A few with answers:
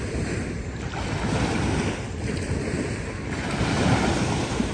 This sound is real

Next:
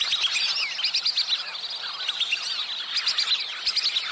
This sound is real